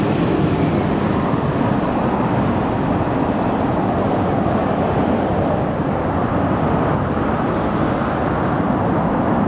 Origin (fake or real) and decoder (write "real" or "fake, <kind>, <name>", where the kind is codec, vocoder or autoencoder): fake, vocoder, BigVGAN v2